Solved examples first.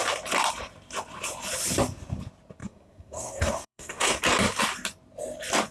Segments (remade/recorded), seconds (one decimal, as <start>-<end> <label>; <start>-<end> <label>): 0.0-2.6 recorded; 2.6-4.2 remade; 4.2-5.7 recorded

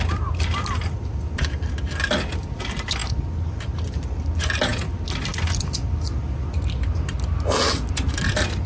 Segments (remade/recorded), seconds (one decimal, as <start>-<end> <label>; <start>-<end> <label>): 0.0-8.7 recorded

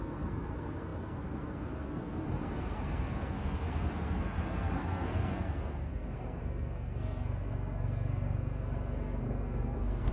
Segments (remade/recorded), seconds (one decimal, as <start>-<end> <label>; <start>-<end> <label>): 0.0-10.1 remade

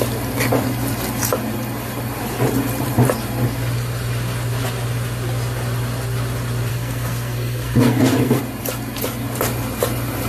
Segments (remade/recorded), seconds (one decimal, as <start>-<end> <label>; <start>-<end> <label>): 0.0-6.7 recorded; 6.7-8.4 remade; 8.4-10.3 recorded